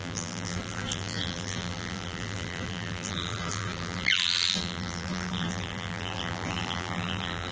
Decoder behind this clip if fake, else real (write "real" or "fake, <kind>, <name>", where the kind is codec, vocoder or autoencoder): fake, vocoder, BigVGAN v2